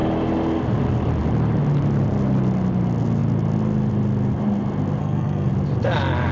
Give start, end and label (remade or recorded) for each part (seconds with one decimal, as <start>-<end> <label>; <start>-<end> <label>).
0.0-5.0 recorded; 5.0-5.5 remade; 5.5-6.3 recorded